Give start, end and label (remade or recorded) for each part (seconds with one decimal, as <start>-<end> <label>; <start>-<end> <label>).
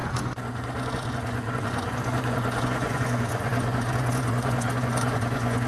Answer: 0.0-5.7 remade